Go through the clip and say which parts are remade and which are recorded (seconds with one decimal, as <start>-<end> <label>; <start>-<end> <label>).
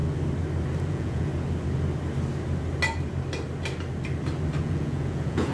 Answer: 0.0-0.8 recorded; 0.8-1.3 remade; 1.3-4.6 recorded; 4.6-5.5 remade